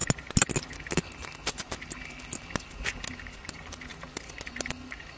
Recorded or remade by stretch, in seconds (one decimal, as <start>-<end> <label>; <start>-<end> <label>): 0.0-5.2 recorded